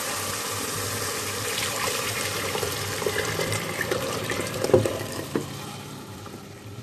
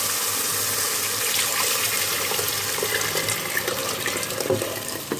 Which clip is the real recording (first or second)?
second